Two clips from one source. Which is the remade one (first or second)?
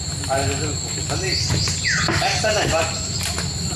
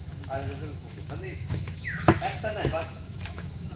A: second